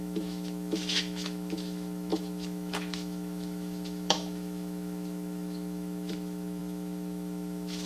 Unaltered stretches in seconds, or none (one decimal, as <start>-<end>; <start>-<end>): none